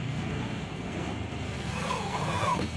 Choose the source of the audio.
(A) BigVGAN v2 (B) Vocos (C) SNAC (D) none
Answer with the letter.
C